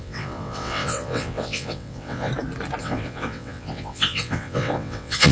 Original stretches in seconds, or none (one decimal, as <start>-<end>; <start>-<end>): 2.3-2.8